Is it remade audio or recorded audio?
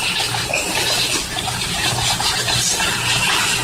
remade